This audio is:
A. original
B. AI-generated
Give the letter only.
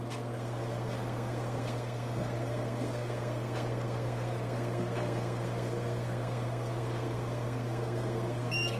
B